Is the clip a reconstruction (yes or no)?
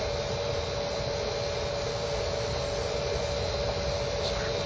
no